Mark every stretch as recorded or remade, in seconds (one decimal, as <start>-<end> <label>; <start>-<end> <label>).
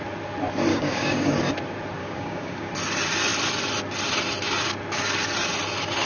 0.0-0.7 recorded; 0.7-1.3 remade; 1.3-2.0 recorded; 2.0-2.7 remade; 2.7-6.1 recorded